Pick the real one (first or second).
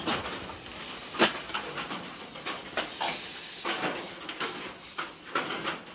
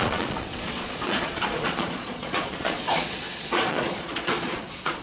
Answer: first